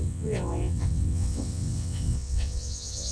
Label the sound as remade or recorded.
remade